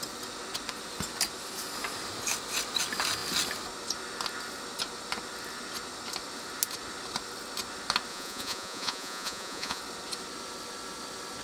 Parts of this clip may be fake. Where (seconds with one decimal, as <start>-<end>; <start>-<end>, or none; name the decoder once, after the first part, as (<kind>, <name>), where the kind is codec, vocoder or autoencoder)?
8.1-9.8 (vocoder, Vocos)